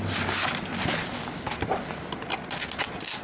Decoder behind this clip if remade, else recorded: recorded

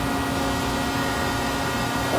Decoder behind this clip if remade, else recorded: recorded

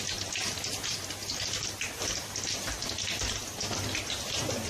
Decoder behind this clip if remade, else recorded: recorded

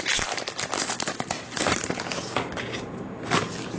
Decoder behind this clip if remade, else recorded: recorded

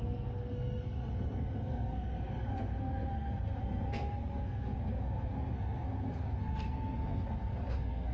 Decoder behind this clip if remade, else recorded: remade, codec, SNAC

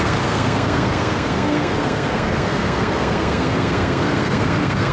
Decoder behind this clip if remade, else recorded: remade, codec, SNAC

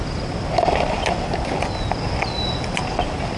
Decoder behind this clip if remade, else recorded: recorded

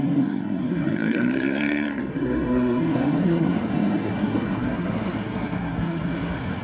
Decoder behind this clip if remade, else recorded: remade, codec, SNAC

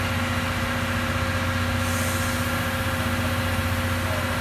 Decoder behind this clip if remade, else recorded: recorded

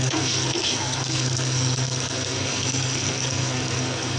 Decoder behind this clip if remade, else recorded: remade, codec, SNAC